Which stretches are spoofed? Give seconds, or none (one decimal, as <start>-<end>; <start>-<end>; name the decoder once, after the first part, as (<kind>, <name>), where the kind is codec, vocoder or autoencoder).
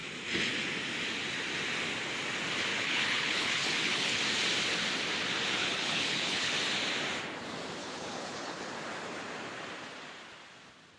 2.7-4.2 (codec, HILCodec); 5.6-6.5; 7.8-8.7